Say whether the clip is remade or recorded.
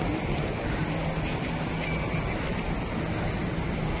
recorded